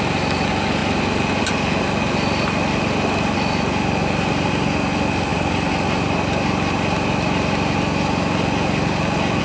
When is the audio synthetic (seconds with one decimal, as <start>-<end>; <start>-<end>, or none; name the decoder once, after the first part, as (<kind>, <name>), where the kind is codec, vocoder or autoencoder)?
none